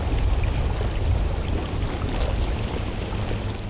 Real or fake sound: real